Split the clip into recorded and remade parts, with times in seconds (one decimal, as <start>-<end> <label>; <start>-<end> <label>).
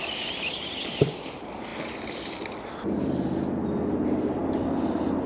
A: 0.0-5.3 recorded